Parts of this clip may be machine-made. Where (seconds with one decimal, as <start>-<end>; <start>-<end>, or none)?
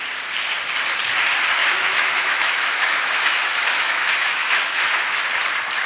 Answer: 1.6-5.1